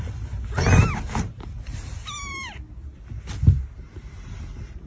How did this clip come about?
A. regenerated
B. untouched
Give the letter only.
B